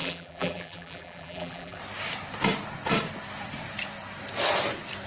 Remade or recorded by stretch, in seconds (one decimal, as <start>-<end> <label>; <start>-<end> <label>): 0.0-1.8 remade; 1.8-5.1 recorded